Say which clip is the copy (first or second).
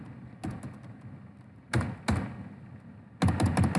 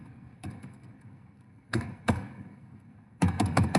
second